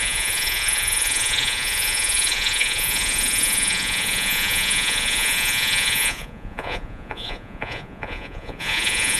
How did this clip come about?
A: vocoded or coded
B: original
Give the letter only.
A